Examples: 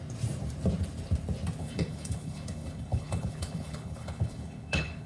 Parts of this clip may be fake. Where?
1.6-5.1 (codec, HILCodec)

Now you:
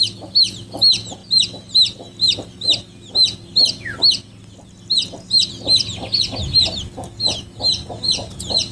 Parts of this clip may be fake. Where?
none

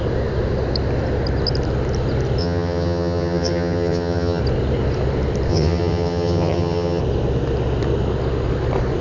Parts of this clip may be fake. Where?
2.4-4.4 (vocoder, HiFi-GAN); 5.5-7.0

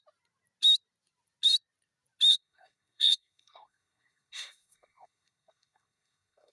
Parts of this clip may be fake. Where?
2.3-6.5 (codec, SNAC)

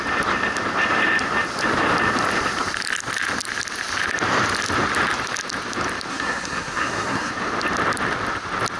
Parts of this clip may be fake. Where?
6.1-7.3 (codec, SNAC)

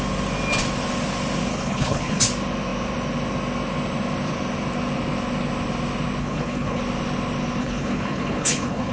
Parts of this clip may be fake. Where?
1.5-2.2 (codec, HILCodec); 6.2-6.8; 7.6-8.9

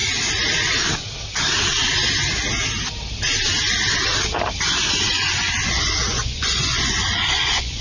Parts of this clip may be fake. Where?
5.1-7.8 (vocoder, Vocos)